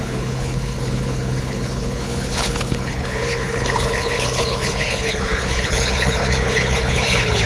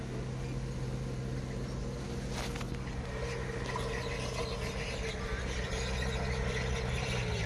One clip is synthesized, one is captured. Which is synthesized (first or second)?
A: first